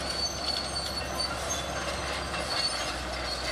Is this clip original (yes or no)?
yes